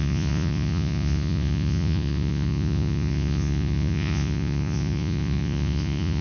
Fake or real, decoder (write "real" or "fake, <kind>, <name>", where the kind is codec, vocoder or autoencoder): fake, vocoder, Vocos